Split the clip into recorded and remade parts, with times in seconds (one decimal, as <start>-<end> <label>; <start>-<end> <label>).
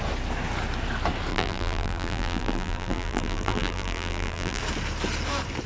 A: 0.0-1.3 recorded; 1.3-4.6 remade; 4.6-5.7 recorded